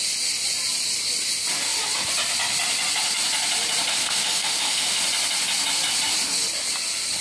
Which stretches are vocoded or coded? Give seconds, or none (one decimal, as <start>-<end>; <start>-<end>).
3.9-5.0